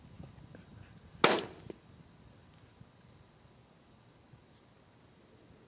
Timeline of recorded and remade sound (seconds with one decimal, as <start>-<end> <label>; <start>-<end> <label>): 0.0-5.7 recorded